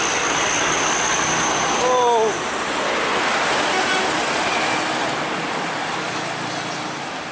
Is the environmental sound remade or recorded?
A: recorded